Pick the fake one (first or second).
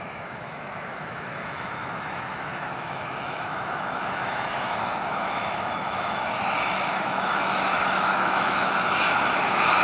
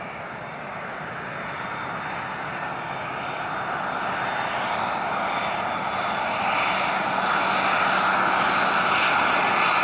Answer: first